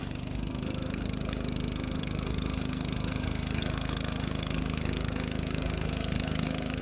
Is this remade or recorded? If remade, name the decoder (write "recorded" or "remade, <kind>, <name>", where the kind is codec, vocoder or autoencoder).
remade, codec, SNAC